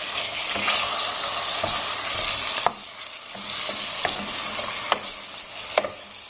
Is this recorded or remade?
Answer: recorded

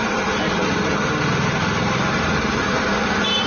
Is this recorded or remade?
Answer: recorded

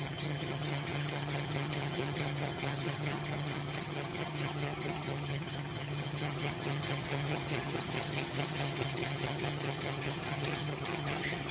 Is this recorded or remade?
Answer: remade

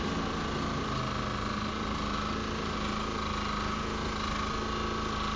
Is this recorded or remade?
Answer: recorded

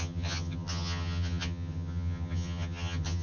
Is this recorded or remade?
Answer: remade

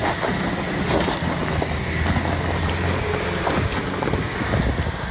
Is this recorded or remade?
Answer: recorded